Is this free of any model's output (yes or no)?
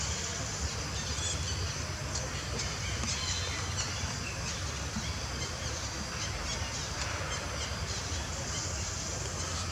yes